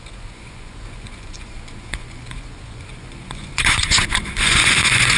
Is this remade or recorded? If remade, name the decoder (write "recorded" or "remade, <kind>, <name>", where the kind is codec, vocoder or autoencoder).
remade, vocoder, Vocos